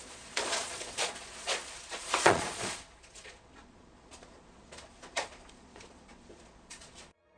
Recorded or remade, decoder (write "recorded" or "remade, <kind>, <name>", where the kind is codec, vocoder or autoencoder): remade, vocoder, Vocos